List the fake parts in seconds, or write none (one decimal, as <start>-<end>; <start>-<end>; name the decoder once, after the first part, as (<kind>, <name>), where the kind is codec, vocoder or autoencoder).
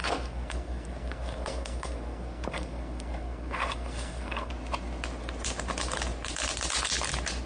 0.0-4.5 (codec, SNAC)